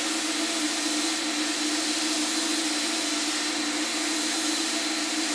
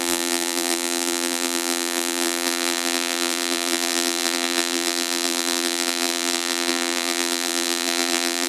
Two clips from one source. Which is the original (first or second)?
first